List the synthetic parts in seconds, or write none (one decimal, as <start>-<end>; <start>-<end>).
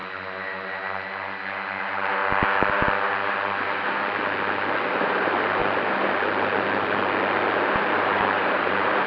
1.8-2.2; 5.0-5.6; 8.0-9.1